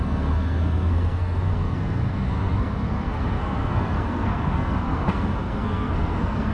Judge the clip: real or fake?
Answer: fake